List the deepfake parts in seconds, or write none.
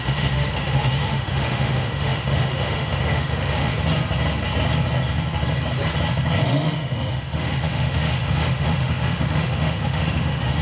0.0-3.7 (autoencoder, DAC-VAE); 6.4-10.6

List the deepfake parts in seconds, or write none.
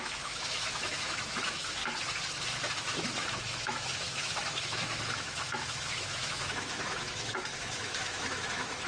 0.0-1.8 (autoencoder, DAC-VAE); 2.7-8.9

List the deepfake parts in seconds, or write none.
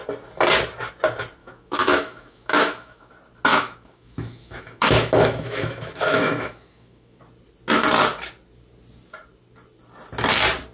1.4-3.1 (autoencoder, DAC-VAE); 3.5-7.2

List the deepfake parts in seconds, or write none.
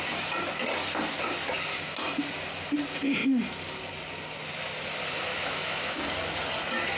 5.3-6.0 (autoencoder, DAC-VAE)